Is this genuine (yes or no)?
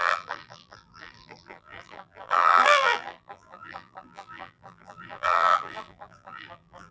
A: no